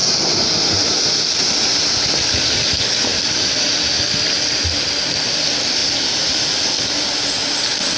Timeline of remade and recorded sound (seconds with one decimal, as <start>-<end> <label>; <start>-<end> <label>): 0.0-8.0 recorded